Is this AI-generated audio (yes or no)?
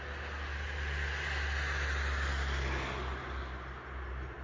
no